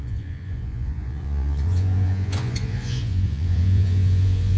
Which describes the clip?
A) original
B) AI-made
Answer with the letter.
B